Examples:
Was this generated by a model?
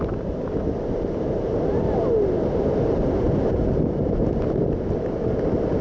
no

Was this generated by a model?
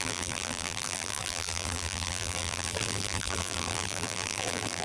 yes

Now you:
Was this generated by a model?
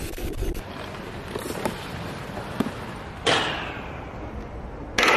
no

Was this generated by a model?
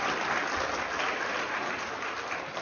no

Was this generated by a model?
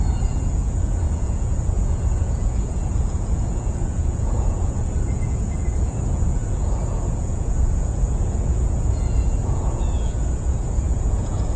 yes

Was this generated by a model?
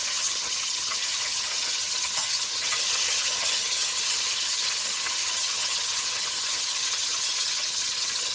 yes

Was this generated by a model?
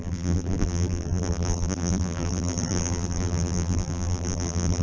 yes